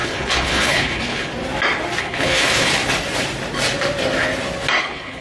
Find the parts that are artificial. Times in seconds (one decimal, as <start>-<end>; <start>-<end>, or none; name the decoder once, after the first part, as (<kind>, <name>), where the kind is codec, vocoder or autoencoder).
0.0-1.3 (codec, HILCodec); 2.0-2.7; 4.8-5.2